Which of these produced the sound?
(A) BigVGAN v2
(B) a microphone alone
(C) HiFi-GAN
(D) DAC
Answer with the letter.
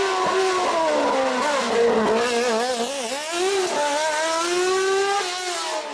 B